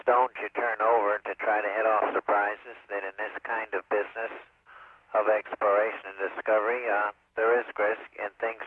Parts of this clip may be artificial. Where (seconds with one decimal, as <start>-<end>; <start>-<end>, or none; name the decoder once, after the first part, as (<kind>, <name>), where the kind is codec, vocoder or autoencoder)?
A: 7.4-7.9 (autoencoder, DAC-VAE)